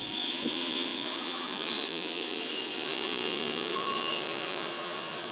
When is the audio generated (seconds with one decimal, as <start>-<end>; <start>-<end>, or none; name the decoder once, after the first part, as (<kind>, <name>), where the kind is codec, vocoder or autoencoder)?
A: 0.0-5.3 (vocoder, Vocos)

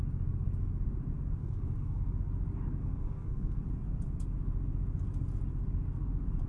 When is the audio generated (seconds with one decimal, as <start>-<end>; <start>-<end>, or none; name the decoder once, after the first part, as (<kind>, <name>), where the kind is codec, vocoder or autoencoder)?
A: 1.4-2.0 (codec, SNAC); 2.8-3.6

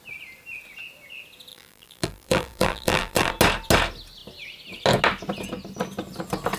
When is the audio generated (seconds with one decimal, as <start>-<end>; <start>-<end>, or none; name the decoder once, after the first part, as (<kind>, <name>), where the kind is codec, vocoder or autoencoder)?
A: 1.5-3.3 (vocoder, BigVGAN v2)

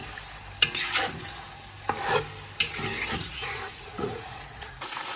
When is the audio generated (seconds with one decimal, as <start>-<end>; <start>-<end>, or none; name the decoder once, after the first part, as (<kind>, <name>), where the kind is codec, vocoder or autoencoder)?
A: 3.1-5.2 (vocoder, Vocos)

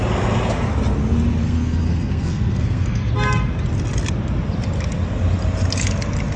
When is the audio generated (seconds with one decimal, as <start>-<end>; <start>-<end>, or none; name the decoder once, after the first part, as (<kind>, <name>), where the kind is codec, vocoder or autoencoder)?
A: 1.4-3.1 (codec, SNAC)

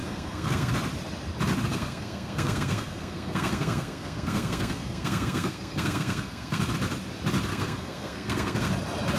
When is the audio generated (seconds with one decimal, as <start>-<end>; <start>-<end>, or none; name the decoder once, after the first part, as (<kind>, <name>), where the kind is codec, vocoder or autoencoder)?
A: 0.0-0.7 (codec, SNAC); 1.7-6.6; 7.5-8.7

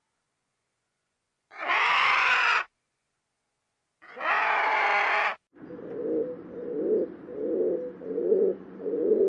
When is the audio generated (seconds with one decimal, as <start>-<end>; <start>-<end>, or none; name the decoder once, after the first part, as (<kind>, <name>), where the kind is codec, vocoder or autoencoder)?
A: 0.0-4.9 (vocoder, Vocos); 8.0-9.3

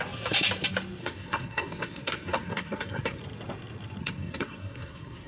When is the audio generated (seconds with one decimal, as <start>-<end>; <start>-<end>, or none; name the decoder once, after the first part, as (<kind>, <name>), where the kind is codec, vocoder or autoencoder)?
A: 1.0-3.2 (codec, SNAC); 4.0-5.3